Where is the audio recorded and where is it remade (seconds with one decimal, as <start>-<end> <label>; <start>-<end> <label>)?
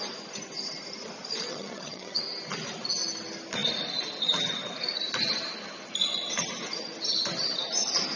0.0-1.5 recorded; 1.5-2.2 remade; 2.2-8.2 recorded